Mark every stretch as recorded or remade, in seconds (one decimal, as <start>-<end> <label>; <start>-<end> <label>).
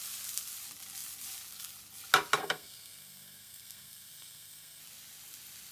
0.0-2.4 recorded; 2.4-4.8 remade; 4.8-5.7 recorded